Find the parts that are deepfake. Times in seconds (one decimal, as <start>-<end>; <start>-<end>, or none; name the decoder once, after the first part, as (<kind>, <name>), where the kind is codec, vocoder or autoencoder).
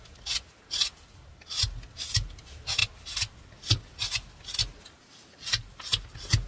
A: none